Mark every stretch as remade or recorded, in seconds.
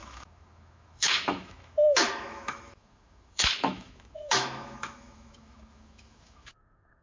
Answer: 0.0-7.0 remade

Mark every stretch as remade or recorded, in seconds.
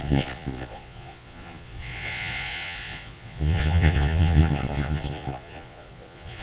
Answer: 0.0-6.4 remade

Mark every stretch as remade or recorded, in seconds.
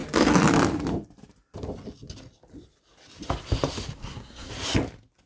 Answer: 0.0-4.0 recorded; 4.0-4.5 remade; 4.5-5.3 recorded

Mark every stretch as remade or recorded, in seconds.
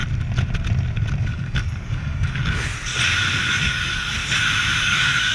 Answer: 0.0-1.2 recorded; 1.2-2.7 remade; 2.7-3.5 recorded; 3.5-4.2 remade; 4.2-4.8 recorded; 4.8-5.3 remade